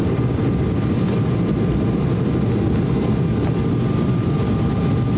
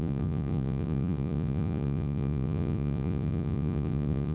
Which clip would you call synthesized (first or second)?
second